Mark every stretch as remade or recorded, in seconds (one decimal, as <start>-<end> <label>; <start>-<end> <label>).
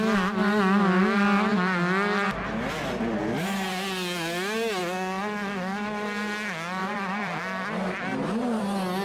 0.0-6.8 recorded; 6.8-7.4 remade; 7.4-9.0 recorded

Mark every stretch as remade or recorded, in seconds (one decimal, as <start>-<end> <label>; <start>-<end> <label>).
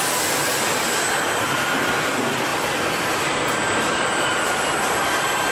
0.0-2.5 recorded; 2.5-4.4 remade; 4.4-5.5 recorded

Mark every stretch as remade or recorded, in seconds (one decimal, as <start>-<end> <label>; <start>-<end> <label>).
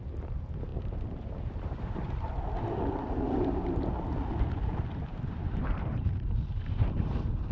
0.0-0.7 recorded; 0.7-2.3 remade; 2.3-5.1 recorded; 5.1-7.5 remade